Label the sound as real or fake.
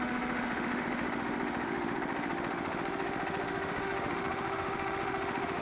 fake